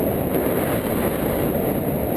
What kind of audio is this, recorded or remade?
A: recorded